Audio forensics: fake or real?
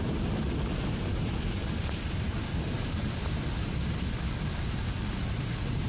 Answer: real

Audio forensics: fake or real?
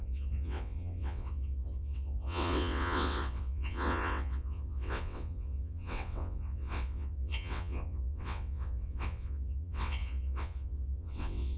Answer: fake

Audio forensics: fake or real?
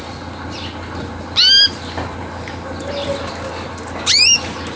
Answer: real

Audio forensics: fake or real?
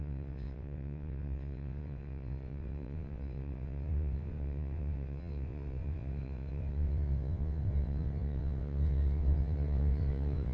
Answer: fake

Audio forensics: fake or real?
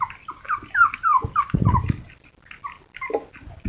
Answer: real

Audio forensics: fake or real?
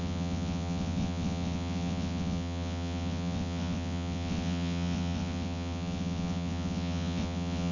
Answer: fake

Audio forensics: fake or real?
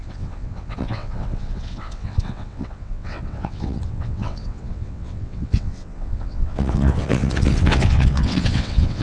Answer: fake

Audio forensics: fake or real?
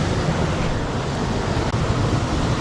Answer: real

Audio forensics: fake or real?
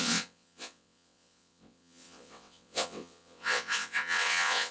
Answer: fake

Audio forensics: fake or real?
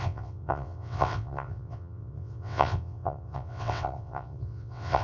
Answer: fake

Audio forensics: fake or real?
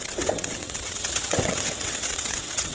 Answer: fake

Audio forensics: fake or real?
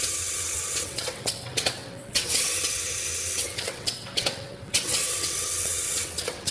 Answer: fake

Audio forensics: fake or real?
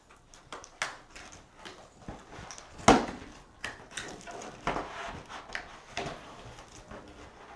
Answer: real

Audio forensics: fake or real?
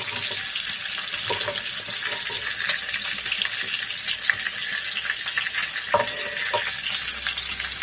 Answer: real